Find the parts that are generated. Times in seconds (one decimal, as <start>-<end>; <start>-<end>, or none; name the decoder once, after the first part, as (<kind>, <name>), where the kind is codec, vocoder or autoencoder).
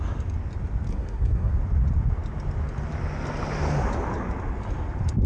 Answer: 0.9-1.5 (codec, SNAC)